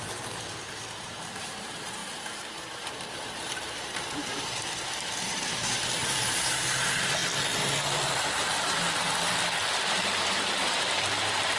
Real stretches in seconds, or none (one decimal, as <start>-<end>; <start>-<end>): 7.2-9.8